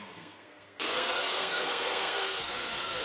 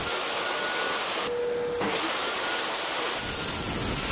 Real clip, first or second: second